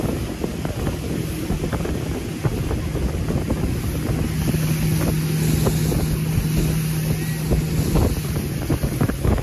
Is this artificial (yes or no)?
no